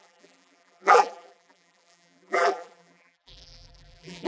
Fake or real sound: fake